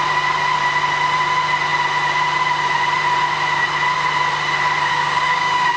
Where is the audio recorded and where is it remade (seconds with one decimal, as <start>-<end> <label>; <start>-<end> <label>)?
0.0-4.9 recorded; 4.9-5.8 remade